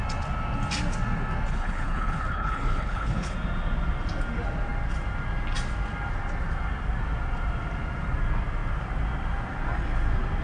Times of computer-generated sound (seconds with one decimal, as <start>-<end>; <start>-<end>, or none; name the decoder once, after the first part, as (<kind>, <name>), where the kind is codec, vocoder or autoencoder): 1.5-3.3 (codec, HILCodec)